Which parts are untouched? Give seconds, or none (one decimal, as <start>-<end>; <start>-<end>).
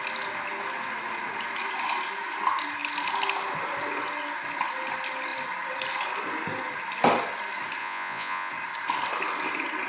0.0-7.8; 8.5-9.9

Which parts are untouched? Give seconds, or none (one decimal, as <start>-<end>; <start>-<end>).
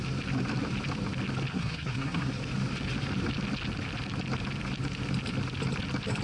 0.0-1.5; 2.3-6.2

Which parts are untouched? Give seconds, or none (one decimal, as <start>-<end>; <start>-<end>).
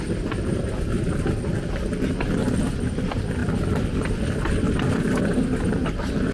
0.0-6.3